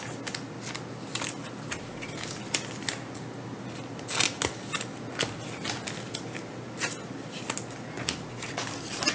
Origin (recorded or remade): recorded